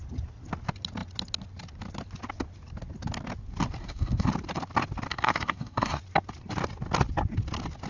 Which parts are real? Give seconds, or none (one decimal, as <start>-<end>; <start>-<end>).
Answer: 0.0-3.8; 4.3-5.1; 6.0-7.9

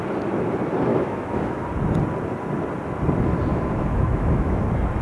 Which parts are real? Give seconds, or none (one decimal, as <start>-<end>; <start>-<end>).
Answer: 0.0-0.9; 1.6-3.5; 4.6-5.0

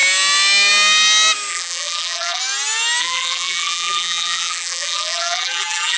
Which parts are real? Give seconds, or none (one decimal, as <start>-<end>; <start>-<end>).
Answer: 0.0-1.5; 2.4-3.0